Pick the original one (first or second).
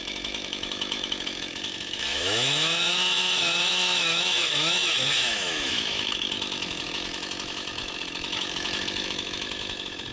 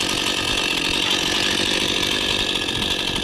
second